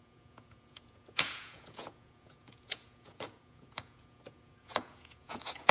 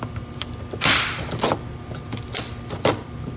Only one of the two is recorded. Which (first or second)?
second